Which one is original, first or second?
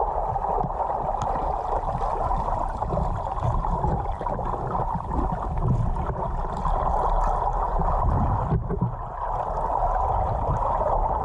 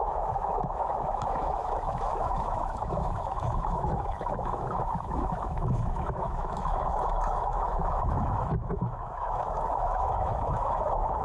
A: first